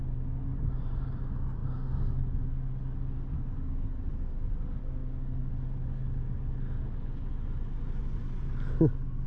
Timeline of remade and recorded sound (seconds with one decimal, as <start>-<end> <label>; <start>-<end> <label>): 0.0-4.8 recorded; 4.8-5.5 remade; 5.5-9.3 recorded